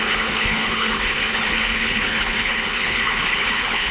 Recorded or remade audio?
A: remade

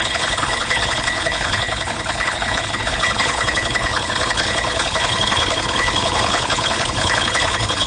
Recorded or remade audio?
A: remade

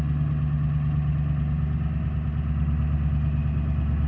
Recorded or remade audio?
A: recorded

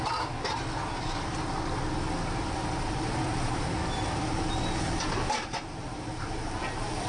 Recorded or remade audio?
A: recorded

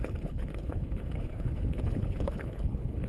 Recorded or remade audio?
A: remade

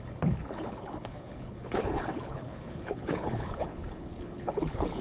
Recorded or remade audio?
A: remade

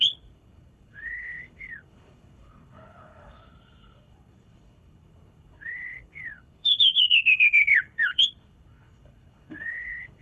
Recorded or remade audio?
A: remade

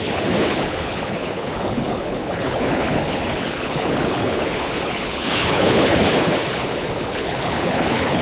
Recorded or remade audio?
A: remade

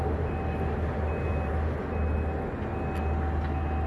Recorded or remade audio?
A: recorded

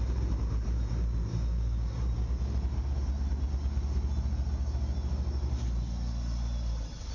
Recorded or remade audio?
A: recorded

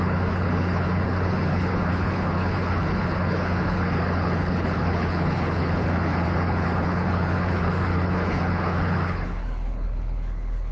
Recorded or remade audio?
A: remade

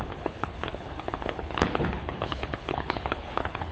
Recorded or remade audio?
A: remade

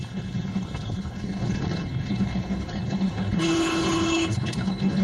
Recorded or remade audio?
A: remade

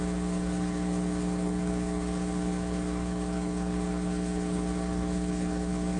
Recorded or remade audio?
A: remade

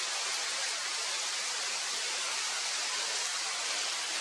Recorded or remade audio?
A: recorded